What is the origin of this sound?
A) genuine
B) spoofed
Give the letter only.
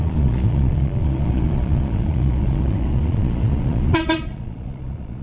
B